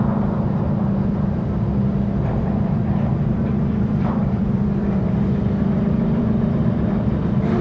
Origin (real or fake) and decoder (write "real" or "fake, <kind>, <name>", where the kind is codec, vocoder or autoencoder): fake, vocoder, BigVGAN v2